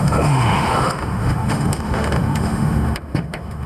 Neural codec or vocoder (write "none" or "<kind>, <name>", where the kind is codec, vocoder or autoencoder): autoencoder, DAC-VAE